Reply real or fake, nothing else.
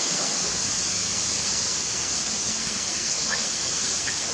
fake